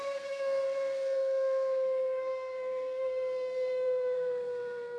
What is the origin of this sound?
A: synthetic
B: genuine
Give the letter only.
A